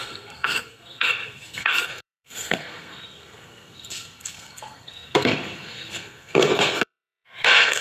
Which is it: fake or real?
fake